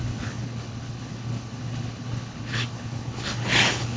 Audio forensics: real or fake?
fake